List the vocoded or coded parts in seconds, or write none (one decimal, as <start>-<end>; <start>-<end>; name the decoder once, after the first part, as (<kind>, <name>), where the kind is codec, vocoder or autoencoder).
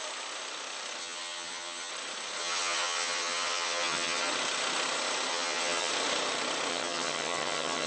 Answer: 1.0-1.9 (vocoder, HiFi-GAN); 2.4-4.3; 5.3-5.9; 6.7-7.9